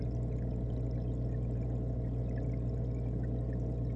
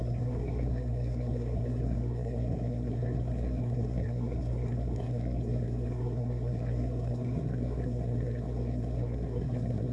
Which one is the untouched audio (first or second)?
first